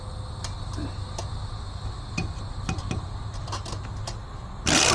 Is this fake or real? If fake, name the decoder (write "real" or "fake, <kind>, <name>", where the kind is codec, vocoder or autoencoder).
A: real